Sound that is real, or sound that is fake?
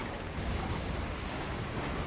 fake